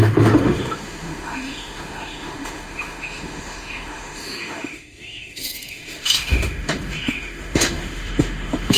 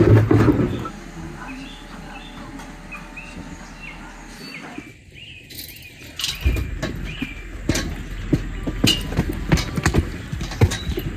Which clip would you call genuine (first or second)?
second